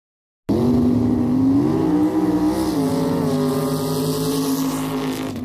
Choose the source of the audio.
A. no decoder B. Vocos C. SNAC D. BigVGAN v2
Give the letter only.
A